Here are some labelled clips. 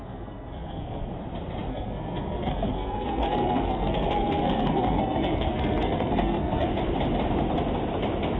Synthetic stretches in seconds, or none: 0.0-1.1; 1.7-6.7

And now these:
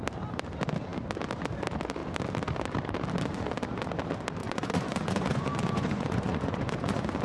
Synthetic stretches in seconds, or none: 4.4-7.2

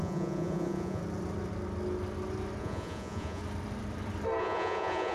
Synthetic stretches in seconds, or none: 0.0-1.0; 2.6-3.4; 4.4-5.1